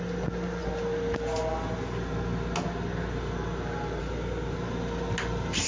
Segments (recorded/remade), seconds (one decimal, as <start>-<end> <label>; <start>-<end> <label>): 0.0-5.7 recorded